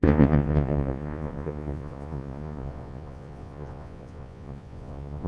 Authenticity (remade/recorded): remade